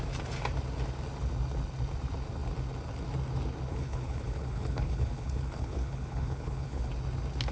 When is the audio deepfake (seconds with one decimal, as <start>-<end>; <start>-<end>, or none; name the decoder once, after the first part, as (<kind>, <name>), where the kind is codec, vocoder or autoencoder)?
3.7-6.9 (codec, HILCodec)